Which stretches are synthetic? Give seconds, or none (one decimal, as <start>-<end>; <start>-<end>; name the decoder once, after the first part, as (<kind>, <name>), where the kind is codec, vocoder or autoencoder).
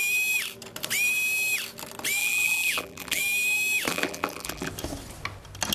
2.2-3.2 (vocoder, BigVGAN v2); 3.9-4.7